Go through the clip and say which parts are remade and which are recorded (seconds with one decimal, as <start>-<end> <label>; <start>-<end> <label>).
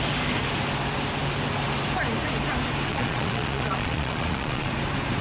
0.0-2.9 recorded; 2.9-4.7 remade; 4.7-5.2 recorded